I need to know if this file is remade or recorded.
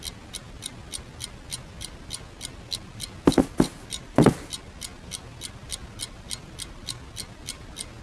recorded